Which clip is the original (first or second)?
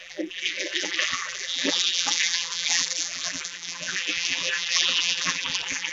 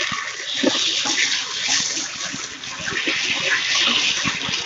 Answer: second